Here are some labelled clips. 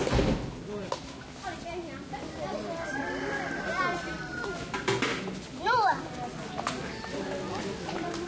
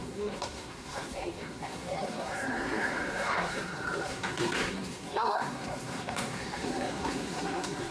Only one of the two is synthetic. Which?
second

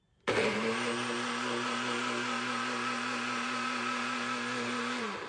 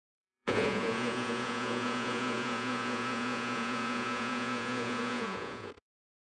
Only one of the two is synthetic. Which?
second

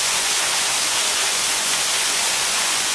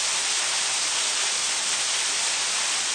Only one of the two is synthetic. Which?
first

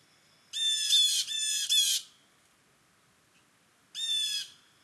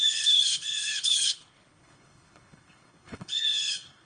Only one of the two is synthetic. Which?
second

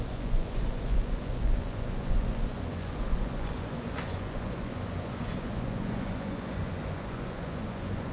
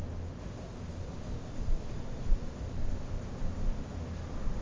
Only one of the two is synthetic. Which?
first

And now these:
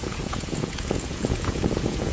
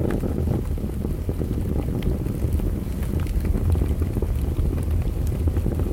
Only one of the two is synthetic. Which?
first